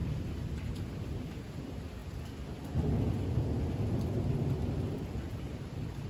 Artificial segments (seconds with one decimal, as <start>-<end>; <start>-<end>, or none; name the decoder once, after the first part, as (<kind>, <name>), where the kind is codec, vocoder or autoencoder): 0.0-1.1 (vocoder, BigVGAN v2); 5.3-6.1